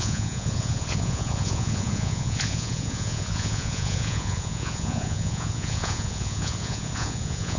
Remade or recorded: remade